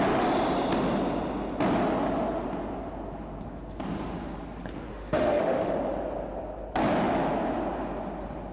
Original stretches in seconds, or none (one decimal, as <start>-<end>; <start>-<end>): 0.0-4.9; 5.7-8.5